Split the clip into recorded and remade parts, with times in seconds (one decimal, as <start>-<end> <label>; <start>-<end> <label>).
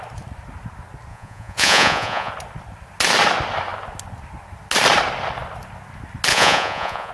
0.0-1.1 recorded; 1.1-2.3 remade; 2.3-6.3 recorded; 6.3-7.1 remade